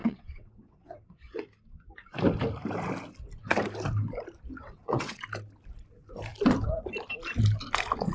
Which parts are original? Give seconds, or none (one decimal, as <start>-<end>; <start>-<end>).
1.4-4.6; 5.2-8.1